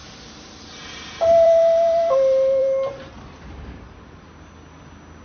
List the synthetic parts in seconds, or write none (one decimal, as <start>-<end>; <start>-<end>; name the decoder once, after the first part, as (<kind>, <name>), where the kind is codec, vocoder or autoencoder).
0.0-3.1 (vocoder, BigVGAN v2)